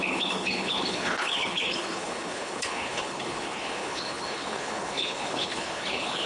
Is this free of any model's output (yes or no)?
no